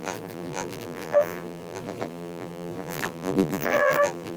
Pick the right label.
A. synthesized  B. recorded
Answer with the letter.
A